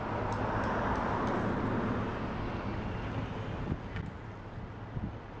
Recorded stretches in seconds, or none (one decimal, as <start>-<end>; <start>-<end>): 0.0-5.4